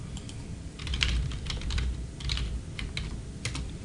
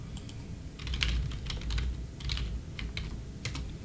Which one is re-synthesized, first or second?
first